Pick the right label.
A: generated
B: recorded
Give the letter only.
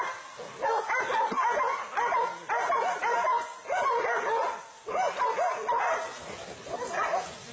B